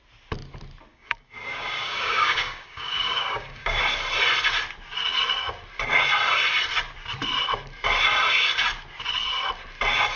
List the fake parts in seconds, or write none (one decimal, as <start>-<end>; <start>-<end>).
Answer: 0.9-3.8